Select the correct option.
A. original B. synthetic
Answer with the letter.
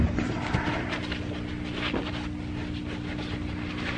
A